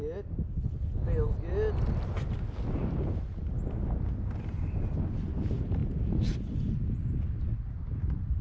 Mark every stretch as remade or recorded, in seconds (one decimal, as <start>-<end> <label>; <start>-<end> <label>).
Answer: 0.0-4.4 recorded; 4.4-8.4 remade